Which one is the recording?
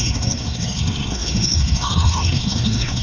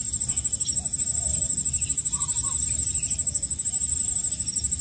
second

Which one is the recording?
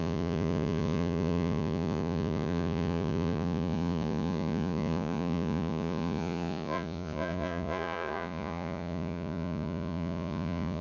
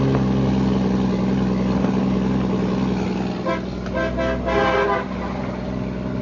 second